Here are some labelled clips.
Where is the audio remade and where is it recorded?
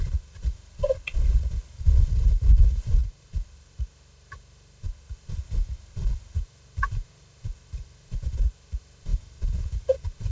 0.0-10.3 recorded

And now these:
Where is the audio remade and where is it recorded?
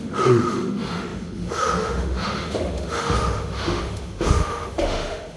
0.0-5.4 remade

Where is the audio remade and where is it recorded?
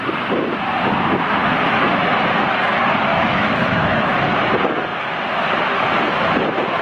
0.0-3.1 recorded; 3.1-4.1 remade; 4.1-6.8 recorded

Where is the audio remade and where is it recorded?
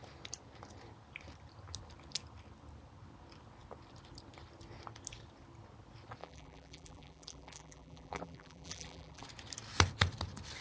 0.0-6.2 recorded; 6.2-9.2 remade; 9.2-10.6 recorded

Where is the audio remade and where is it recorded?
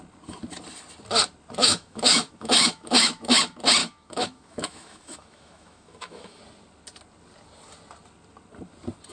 0.0-1.6 recorded; 1.6-3.4 remade; 3.4-3.8 recorded; 3.8-6.4 remade; 6.4-9.1 recorded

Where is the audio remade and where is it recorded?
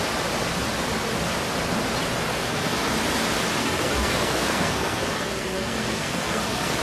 0.0-2.3 recorded; 2.3-2.9 remade; 2.9-3.6 recorded; 3.6-6.8 remade